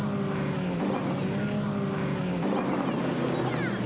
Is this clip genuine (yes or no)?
yes